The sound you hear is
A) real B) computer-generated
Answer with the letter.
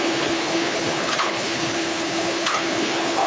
B